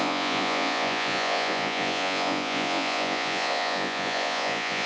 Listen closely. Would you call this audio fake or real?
fake